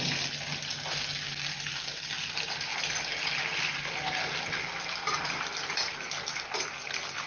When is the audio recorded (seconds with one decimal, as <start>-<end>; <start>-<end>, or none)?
0.0-7.3